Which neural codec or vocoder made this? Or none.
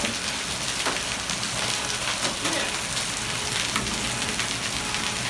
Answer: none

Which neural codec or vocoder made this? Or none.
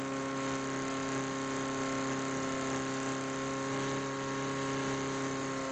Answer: none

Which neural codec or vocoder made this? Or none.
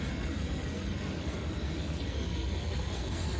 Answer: codec, SNAC